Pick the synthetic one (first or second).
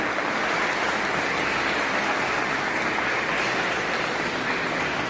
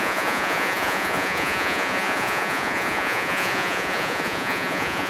second